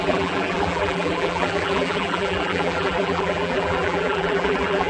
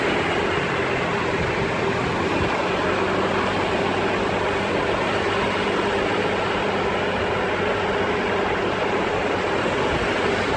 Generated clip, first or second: first